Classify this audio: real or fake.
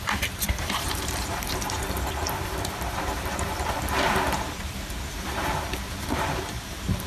fake